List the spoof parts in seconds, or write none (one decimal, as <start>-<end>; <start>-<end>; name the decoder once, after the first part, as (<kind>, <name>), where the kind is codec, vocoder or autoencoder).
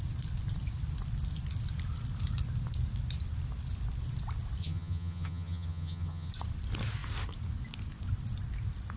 4.6-6.3 (vocoder, HiFi-GAN)